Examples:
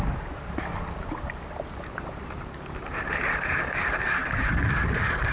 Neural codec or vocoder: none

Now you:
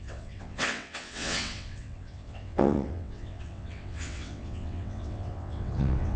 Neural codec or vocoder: vocoder, WaveNeXt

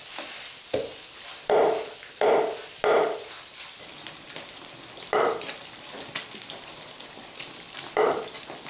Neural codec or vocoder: none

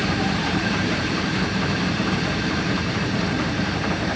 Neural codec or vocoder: vocoder, BigVGAN v2